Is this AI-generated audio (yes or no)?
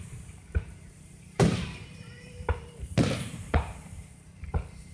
yes